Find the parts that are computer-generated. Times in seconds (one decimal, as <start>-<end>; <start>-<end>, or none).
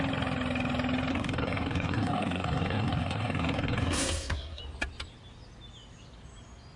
1.1-4.6